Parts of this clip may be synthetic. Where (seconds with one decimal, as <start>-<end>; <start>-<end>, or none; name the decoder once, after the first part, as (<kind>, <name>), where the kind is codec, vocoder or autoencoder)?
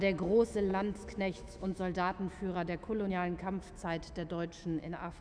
0.0-5.2 (autoencoder, DAC-VAE)